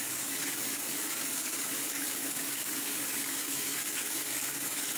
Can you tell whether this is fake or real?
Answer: fake